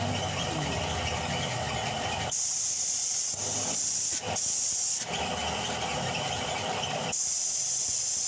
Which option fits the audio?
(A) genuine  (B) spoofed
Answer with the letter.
A